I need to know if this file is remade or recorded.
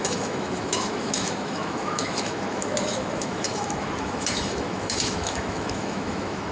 remade